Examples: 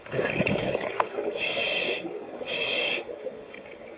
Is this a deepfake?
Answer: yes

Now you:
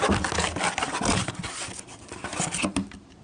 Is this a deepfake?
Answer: no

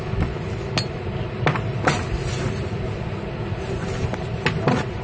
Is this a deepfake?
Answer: no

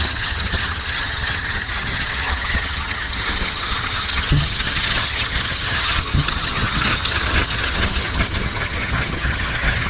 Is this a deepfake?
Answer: yes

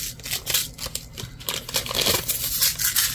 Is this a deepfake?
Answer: no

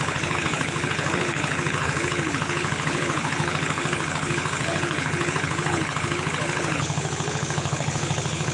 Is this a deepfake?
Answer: yes